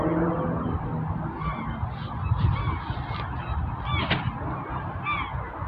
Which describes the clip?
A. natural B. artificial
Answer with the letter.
A